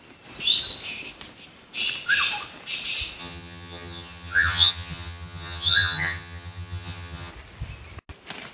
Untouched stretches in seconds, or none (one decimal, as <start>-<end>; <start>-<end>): 0.0-3.2; 7.3-8.5